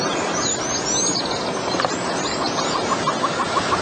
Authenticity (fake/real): real